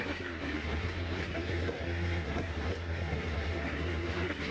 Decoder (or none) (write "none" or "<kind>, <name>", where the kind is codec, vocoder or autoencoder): codec, SNAC